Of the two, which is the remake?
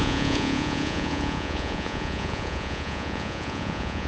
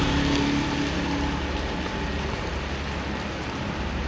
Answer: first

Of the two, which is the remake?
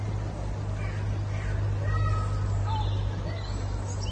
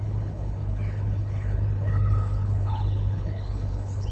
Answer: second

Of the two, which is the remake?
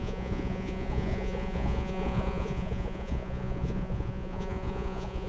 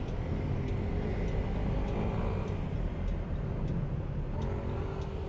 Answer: first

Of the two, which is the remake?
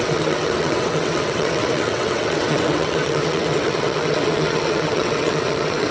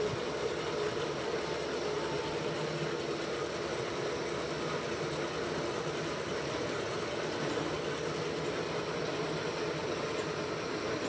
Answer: first